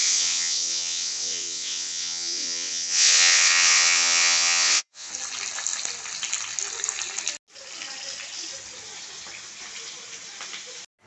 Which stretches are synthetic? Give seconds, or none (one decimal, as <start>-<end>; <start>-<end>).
0.0-5.1